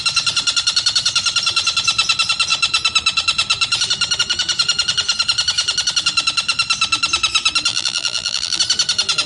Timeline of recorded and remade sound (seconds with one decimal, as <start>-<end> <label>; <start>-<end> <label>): 0.0-7.7 recorded; 7.7-8.6 remade; 8.6-9.3 recorded